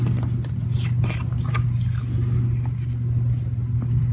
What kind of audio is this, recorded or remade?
recorded